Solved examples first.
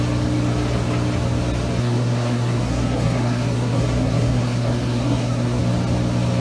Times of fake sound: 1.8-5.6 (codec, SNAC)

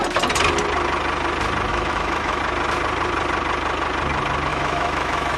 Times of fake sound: 1.7-2.4 (autoencoder, DAC-VAE); 4.5-5.4